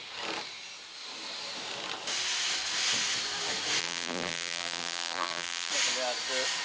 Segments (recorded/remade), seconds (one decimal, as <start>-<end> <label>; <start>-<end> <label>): 0.0-3.8 recorded; 3.8-5.7 remade; 5.7-6.6 recorded